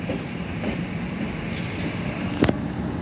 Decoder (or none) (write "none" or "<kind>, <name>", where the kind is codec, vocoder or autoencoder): none